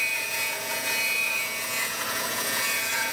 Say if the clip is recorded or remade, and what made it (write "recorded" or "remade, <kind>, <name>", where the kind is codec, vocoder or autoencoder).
remade, vocoder, Vocos